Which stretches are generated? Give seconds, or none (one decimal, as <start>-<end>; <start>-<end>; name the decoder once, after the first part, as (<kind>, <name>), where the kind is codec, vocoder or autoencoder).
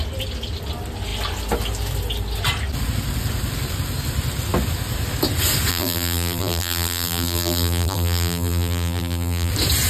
5.7-9.5 (vocoder, BigVGAN v2)